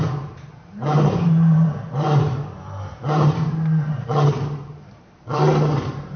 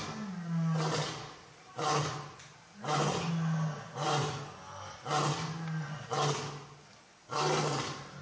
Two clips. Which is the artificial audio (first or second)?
first